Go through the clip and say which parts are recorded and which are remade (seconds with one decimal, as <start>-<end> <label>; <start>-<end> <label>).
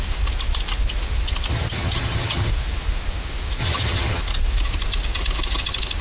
0.0-1.5 recorded; 1.5-2.5 remade; 2.5-3.6 recorded; 3.6-4.2 remade; 4.2-6.0 recorded